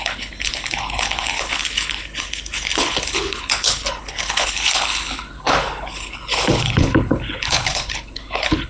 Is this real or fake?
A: fake